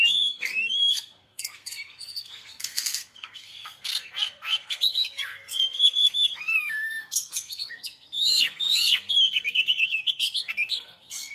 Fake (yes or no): yes